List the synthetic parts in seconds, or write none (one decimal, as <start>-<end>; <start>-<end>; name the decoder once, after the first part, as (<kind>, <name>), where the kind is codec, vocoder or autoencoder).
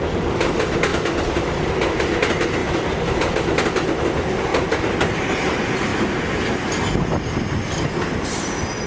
0.9-1.7 (vocoder, BigVGAN v2); 2.6-3.3; 4.5-5.2